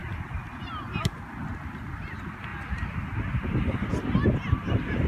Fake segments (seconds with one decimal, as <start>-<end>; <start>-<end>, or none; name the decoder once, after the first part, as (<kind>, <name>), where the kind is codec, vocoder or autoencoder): 0.0-0.7 (vocoder, BigVGAN v2)